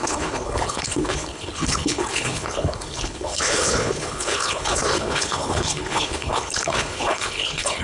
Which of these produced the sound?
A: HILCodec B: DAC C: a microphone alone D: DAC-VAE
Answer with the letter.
A